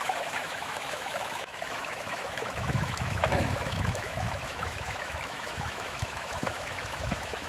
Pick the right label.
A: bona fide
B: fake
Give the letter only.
B